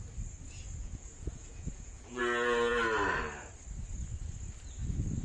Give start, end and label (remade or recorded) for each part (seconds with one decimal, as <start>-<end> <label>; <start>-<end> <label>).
0.0-0.8 recorded; 0.8-2.2 remade; 2.2-5.2 recorded